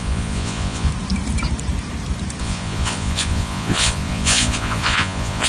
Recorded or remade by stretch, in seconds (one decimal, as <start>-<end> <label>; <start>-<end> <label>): 0.0-0.9 remade; 0.9-2.4 recorded; 2.4-5.5 remade